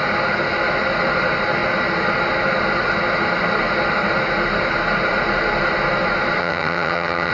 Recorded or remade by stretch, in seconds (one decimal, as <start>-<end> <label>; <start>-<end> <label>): 0.0-6.4 recorded; 6.4-7.3 remade